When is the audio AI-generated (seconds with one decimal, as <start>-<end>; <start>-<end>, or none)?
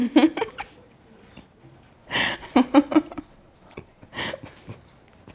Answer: 2.0-4.2